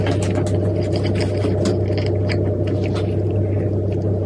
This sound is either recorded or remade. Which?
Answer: recorded